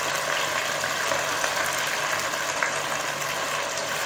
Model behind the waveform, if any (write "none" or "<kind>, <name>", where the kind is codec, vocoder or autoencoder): none